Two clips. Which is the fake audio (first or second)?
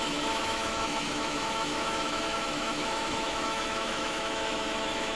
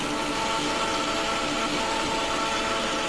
first